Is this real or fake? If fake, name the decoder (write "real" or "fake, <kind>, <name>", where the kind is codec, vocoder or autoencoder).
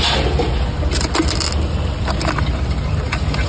real